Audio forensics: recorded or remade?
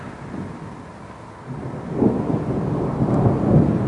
recorded